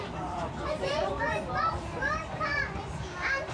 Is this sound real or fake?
fake